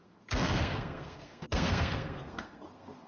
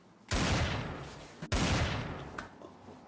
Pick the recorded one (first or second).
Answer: second